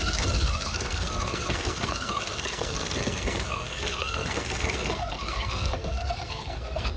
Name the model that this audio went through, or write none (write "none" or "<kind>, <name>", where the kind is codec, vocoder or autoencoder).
codec, SNAC